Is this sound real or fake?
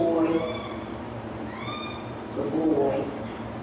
fake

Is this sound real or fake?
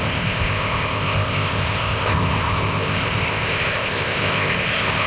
fake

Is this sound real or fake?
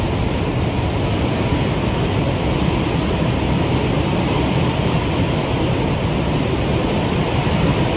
real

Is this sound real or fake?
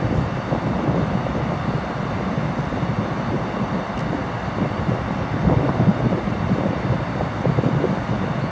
real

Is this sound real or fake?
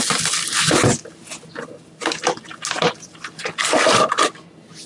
real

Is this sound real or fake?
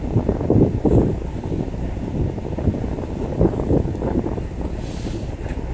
real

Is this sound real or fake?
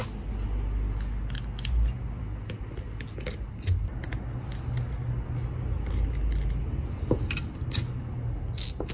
real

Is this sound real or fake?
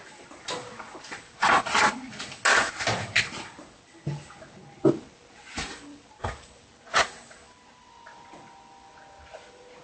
real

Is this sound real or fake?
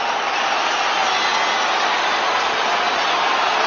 real